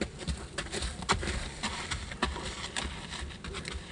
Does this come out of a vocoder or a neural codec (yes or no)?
no